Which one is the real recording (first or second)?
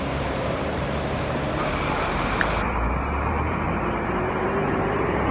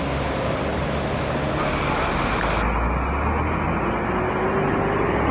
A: second